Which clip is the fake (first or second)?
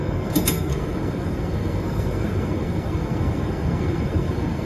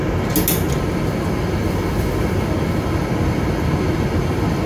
first